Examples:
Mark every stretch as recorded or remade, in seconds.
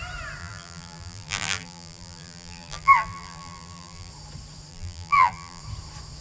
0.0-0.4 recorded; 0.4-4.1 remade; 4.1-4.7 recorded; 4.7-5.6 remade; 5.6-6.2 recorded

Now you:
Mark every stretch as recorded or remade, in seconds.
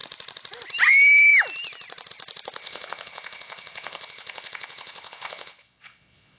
0.0-2.6 recorded; 2.6-6.4 remade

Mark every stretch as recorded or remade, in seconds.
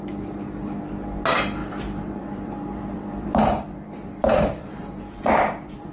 0.0-1.6 recorded; 1.6-5.0 remade; 5.0-5.9 recorded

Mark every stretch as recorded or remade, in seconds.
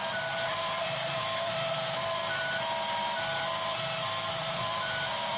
0.0-2.2 remade; 2.2-4.3 recorded; 4.3-5.4 remade